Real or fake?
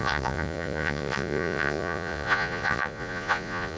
fake